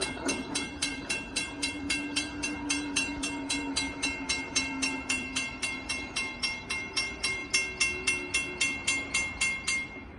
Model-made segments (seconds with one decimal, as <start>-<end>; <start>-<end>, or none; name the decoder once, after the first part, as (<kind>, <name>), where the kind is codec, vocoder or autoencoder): 0.0-7.4 (vocoder, BigVGAN v2)